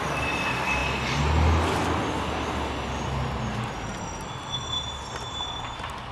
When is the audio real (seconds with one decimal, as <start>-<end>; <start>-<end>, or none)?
0.0-6.1